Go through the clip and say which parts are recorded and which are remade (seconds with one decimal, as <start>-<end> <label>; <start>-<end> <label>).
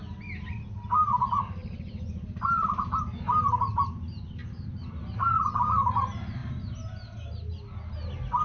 0.0-1.6 recorded; 1.6-2.3 remade; 2.3-8.4 recorded